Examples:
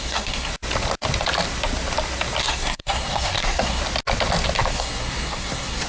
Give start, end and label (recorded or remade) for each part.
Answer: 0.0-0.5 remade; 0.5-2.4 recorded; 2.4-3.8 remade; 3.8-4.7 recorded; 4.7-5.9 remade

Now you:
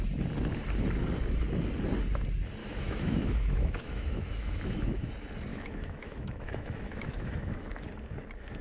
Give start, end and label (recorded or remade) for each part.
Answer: 0.0-2.6 recorded; 2.6-5.1 remade; 5.1-5.5 recorded; 5.5-7.7 remade; 7.7-8.6 recorded

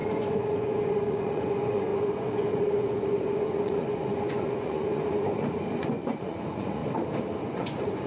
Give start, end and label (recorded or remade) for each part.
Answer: 0.0-6.8 remade; 6.8-7.4 recorded; 7.4-8.1 remade